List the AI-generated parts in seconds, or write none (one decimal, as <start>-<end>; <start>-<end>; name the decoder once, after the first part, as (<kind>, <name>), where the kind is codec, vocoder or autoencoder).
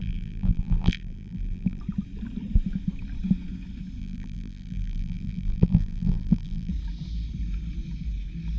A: 0.0-1.8 (vocoder, BigVGAN v2); 4.0-6.7